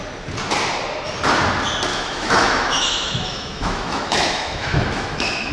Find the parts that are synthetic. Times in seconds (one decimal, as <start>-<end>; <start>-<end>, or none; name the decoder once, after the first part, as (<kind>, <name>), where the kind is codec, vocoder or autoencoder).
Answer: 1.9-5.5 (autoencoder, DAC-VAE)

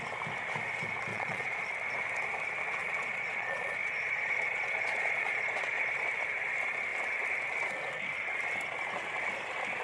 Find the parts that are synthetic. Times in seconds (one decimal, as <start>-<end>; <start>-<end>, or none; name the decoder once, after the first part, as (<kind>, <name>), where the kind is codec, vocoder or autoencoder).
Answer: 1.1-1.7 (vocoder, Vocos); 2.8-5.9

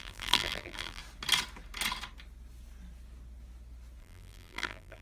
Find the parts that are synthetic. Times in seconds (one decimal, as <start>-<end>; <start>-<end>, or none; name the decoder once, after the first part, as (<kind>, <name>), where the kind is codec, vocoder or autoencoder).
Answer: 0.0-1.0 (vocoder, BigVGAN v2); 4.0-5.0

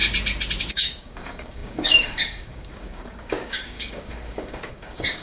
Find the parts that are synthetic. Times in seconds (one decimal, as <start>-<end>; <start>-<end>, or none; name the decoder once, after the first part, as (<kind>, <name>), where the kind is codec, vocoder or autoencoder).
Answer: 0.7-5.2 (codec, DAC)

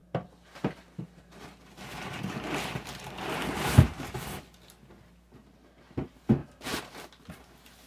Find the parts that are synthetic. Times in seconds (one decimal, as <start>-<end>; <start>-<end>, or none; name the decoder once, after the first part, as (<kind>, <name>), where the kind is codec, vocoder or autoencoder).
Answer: none

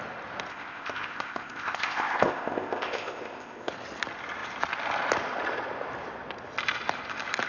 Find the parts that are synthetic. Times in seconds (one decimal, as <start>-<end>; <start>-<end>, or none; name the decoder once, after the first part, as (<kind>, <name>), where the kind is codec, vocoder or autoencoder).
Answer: 0.5-3.7 (codec, ZipCodec)

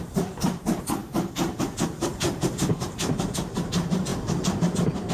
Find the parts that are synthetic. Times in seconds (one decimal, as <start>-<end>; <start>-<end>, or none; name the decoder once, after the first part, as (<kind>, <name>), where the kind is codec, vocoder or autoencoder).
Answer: 0.0-5.1 (vocoder, BigVGAN v2)

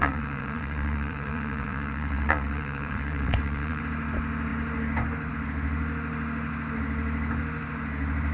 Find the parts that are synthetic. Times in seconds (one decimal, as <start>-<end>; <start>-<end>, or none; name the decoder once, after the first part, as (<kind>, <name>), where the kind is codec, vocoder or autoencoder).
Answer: 0.0-3.8 (vocoder, WaveNeXt)